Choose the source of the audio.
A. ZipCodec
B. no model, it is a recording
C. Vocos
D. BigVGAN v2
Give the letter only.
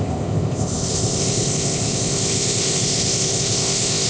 A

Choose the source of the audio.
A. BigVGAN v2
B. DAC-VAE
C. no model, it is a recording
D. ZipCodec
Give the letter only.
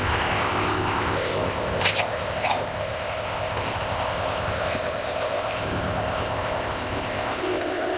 D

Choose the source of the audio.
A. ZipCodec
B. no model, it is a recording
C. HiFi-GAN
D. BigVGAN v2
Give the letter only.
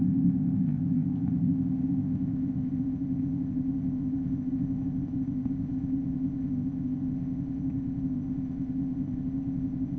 A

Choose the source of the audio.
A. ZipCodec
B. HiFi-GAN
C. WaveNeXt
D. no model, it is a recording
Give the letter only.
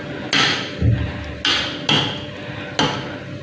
D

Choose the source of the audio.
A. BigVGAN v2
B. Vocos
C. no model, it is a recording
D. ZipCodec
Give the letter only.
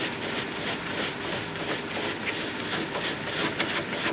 C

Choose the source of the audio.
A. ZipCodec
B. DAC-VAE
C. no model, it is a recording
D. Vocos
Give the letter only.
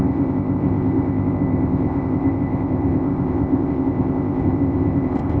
A